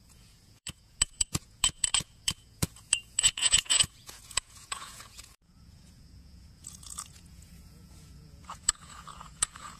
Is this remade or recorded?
remade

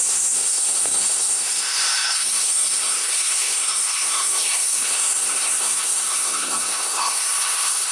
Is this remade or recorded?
remade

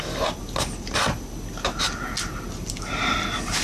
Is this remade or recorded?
recorded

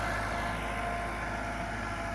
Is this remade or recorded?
recorded